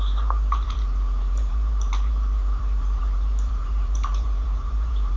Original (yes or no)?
no